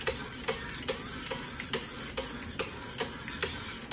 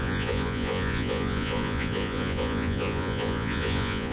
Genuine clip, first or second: first